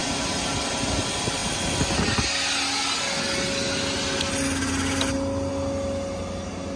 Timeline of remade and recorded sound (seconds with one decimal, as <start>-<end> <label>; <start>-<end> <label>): 0.0-6.8 recorded

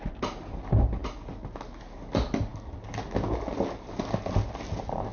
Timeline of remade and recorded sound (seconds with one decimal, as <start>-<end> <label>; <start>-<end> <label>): 0.0-5.1 recorded

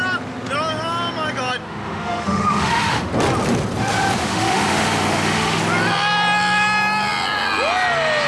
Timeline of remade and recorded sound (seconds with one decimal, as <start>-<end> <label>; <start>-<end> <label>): 0.0-1.6 recorded; 1.6-3.1 remade; 3.1-4.2 recorded; 4.2-5.6 remade; 5.6-8.3 recorded

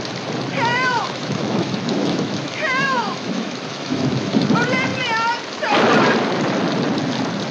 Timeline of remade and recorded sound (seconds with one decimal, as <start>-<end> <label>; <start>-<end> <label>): 0.0-0.7 recorded; 0.7-4.3 remade; 4.3-7.5 recorded

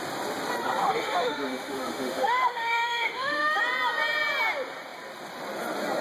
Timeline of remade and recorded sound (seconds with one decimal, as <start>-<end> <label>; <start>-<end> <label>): 0.0-0.8 recorded; 0.8-3.6 remade; 3.6-6.0 recorded

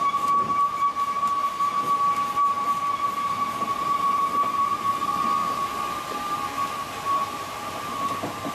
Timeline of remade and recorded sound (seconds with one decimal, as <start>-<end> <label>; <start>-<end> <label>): 0.0-8.5 recorded